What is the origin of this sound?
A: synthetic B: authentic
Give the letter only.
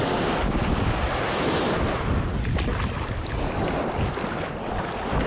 B